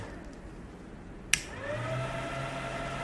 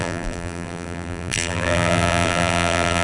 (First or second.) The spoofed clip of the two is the second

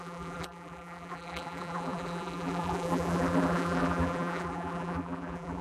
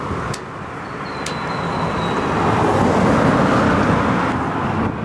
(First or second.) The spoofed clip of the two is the first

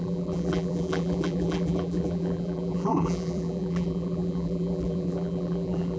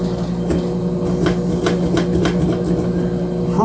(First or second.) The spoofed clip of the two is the first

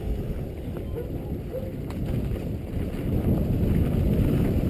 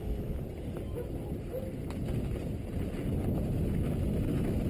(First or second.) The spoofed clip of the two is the first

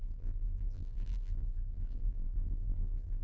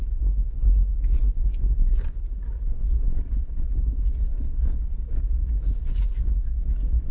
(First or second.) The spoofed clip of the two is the first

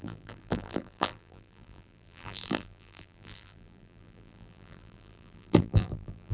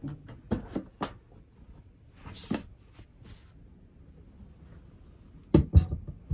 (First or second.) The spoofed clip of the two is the first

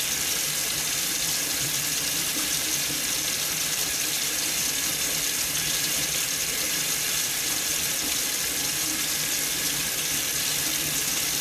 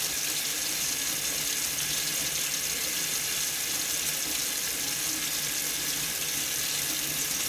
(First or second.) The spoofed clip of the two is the first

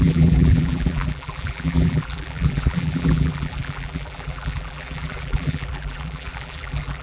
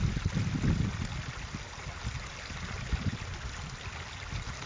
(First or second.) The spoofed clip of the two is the first